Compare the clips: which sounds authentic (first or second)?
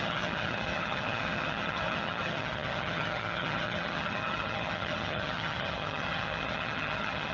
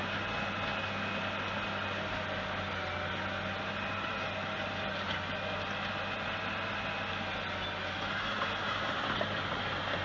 second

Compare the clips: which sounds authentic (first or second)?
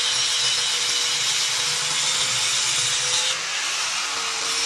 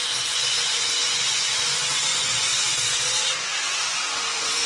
first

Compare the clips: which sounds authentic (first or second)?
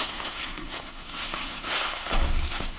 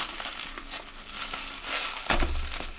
second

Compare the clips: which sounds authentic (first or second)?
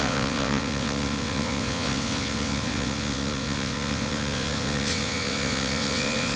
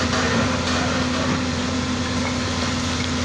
second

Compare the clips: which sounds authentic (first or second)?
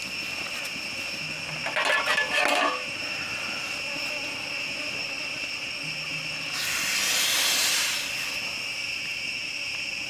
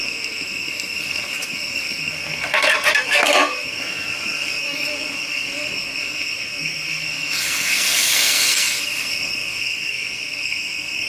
first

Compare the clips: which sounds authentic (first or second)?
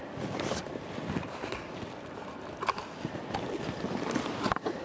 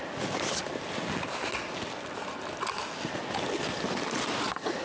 second